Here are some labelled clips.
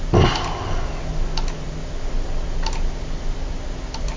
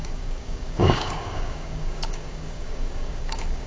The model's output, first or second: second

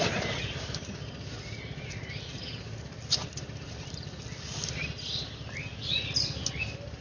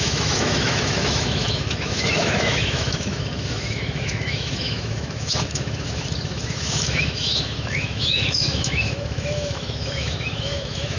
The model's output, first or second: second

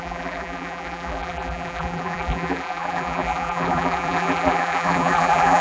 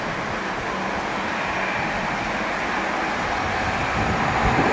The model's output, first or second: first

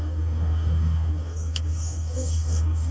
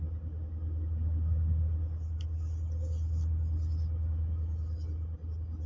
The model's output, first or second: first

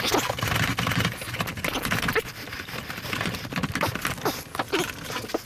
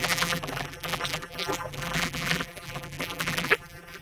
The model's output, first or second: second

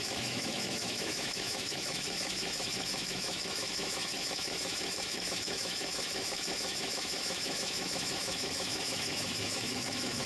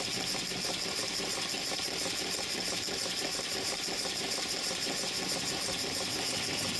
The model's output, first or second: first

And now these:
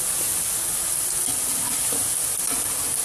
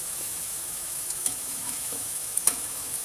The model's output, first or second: second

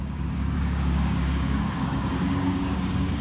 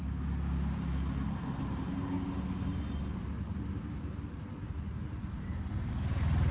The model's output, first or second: first